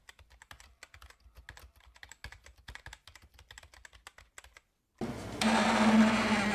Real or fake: real